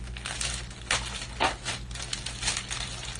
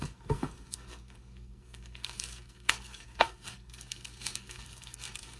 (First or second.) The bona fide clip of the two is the first